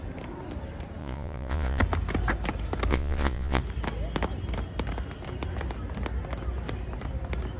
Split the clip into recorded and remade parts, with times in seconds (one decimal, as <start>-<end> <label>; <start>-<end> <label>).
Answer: 0.0-1.0 recorded; 1.0-1.8 remade; 1.8-2.9 recorded; 2.9-3.6 remade; 3.6-7.6 recorded